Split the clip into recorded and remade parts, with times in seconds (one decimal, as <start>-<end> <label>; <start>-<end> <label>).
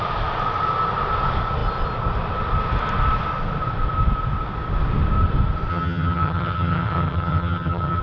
0.0-5.7 recorded; 5.7-8.0 remade